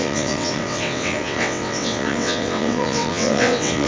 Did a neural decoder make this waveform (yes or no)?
yes